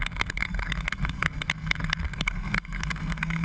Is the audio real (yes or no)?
no